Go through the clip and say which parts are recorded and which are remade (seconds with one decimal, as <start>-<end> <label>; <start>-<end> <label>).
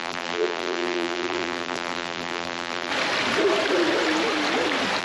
0.0-2.9 remade; 2.9-5.0 recorded